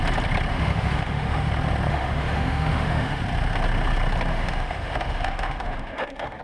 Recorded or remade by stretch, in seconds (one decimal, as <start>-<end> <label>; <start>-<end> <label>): 0.0-0.5 recorded; 0.5-1.5 remade; 1.5-1.9 recorded; 1.9-3.2 remade; 3.2-4.3 recorded; 4.3-6.4 remade